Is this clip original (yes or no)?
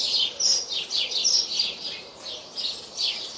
yes